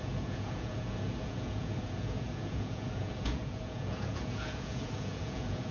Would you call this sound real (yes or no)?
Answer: no